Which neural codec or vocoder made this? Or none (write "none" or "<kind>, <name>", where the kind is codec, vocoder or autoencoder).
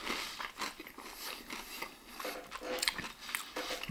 none